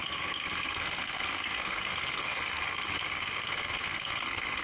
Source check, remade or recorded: remade